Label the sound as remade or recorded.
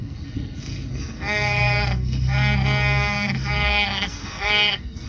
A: remade